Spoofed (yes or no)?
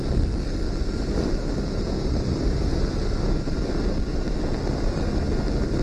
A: no